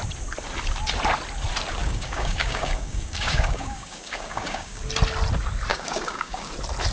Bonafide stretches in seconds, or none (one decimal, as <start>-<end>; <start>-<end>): 0.0-1.8; 4.8-5.7; 6.5-6.9